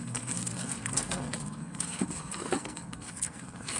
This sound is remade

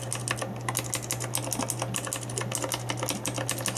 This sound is recorded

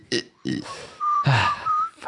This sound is remade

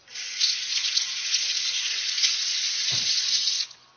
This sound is remade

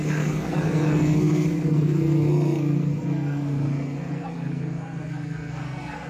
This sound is remade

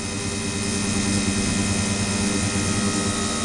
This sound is recorded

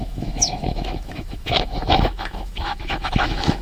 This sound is remade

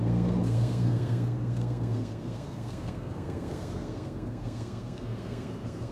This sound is remade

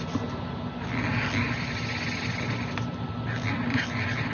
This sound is recorded